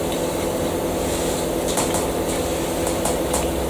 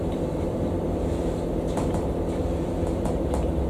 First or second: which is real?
first